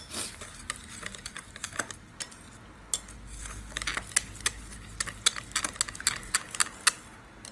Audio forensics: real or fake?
real